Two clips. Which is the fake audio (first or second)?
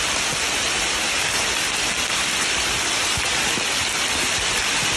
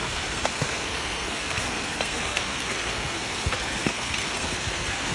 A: second